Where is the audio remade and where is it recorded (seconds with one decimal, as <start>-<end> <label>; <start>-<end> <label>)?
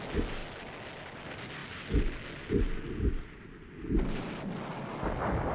0.0-5.5 recorded